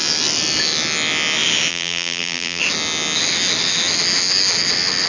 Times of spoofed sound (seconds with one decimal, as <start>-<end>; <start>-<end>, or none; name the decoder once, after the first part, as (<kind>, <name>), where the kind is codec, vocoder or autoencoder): 1.7-2.6 (vocoder, BigVGAN v2)